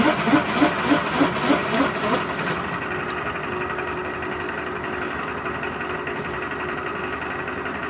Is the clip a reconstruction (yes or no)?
no